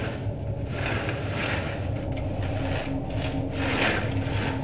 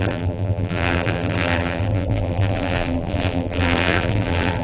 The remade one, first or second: second